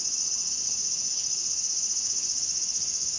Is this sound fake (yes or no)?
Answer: yes